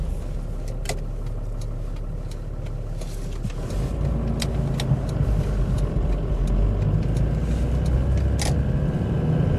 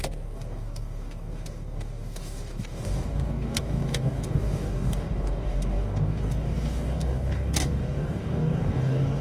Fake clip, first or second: second